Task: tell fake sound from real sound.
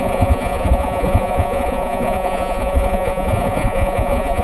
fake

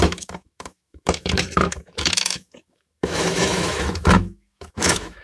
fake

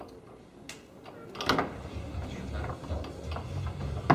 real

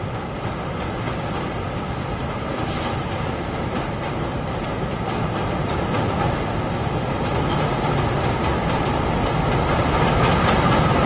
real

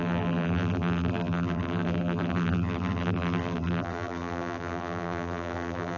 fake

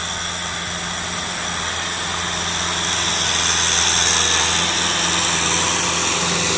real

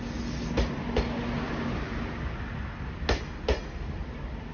real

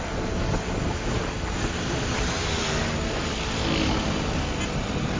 real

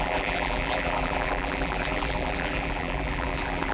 fake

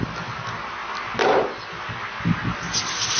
real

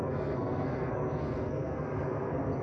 fake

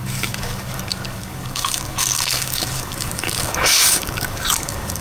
fake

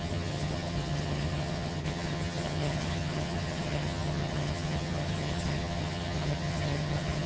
fake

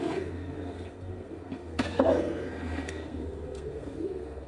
fake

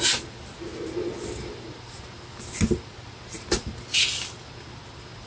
real